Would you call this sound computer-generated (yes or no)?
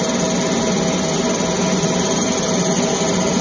no